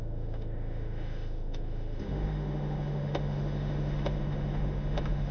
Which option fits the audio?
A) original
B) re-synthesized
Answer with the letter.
B